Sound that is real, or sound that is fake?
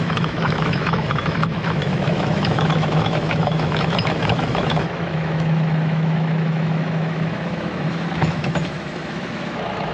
fake